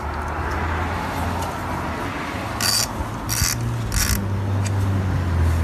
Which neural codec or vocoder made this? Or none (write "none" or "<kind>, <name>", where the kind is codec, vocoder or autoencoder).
none